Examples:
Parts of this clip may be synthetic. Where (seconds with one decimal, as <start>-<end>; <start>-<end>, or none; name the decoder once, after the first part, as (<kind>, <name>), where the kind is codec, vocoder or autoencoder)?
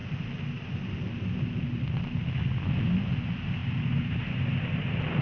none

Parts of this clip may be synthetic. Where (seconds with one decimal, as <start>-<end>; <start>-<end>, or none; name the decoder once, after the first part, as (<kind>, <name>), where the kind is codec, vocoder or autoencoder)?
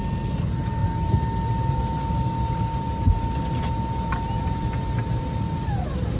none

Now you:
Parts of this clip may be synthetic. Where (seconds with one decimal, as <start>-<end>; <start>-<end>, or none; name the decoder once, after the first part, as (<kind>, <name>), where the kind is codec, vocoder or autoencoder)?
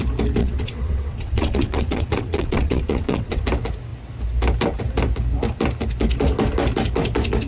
0.4-3.4 (vocoder, WaveNeXt)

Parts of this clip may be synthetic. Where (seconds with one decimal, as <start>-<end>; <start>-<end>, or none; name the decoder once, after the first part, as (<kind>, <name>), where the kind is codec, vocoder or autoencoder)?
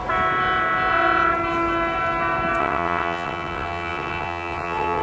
2.6-5.0 (vocoder, WaveNeXt)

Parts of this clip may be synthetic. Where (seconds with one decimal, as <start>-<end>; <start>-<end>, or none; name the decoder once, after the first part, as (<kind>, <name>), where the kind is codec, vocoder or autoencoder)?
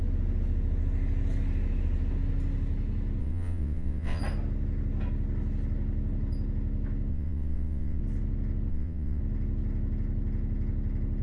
3.2-4.2 (vocoder, WaveNeXt); 7.1-8.0; 8.7-9.2